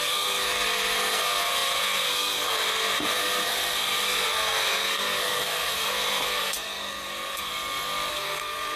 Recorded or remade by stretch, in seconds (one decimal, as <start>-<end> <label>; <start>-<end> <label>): 0.0-7.5 remade; 7.5-8.1 recorded; 8.1-8.8 remade